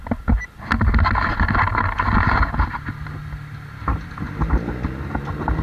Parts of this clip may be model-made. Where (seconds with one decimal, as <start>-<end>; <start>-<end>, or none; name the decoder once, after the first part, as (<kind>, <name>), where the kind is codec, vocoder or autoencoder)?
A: none

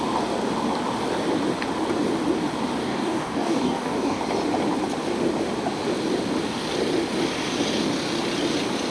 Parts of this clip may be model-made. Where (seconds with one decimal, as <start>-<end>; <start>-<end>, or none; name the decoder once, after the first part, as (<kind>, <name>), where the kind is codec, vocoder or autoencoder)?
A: 2.8-4.2 (codec, DAC)

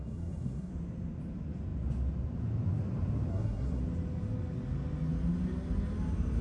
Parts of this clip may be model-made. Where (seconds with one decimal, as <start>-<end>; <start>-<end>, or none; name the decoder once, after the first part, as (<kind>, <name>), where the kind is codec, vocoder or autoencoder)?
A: 0.0-0.7 (codec, SNAC); 3.3-3.8

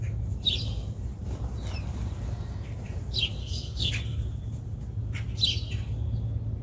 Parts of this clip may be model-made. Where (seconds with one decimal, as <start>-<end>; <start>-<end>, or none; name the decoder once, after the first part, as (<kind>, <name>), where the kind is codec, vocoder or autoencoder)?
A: 3.4-3.9 (codec, SNAC)

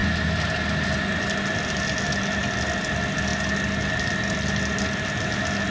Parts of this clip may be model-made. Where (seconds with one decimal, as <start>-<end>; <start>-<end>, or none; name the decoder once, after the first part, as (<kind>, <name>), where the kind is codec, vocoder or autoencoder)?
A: none

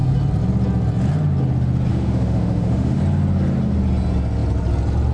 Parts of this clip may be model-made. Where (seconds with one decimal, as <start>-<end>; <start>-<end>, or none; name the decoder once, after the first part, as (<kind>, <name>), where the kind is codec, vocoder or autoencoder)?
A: 1.9-3.0 (autoencoder, DAC-VAE)

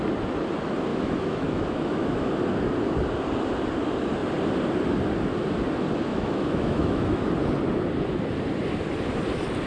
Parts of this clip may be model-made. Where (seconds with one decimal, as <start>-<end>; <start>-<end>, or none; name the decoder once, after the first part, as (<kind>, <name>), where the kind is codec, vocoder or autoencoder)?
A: 0.9-2.3 (autoencoder, DAC-VAE); 6.1-7.3